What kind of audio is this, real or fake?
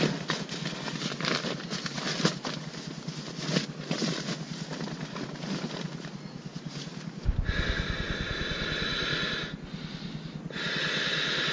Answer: real